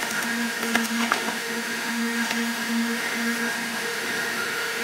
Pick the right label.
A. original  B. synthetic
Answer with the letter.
B